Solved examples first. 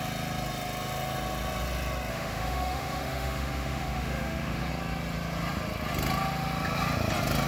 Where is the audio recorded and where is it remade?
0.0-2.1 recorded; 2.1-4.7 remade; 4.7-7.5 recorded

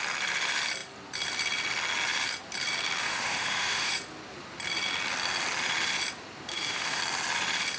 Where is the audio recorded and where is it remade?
0.0-3.0 recorded; 3.0-3.9 remade; 3.9-6.5 recorded; 6.5-7.0 remade; 7.0-7.8 recorded

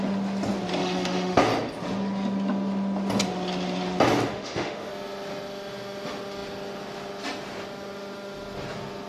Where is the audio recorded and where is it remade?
0.0-0.8 recorded; 0.8-1.4 remade; 1.4-4.3 recorded; 4.3-4.9 remade; 4.9-9.1 recorded

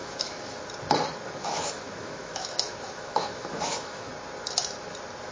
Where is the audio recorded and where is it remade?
0.0-0.6 remade; 0.6-1.4 recorded; 1.4-4.1 remade; 4.1-5.3 recorded

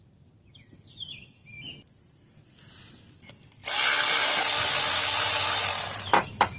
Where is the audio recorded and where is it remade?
0.0-6.6 recorded